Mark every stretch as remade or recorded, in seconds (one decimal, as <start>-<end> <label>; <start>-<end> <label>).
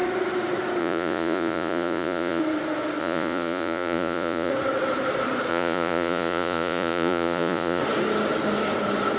0.0-0.8 recorded; 0.8-2.4 remade; 2.4-3.0 recorded; 3.0-4.5 remade; 4.5-5.5 recorded; 5.5-7.8 remade; 7.8-9.2 recorded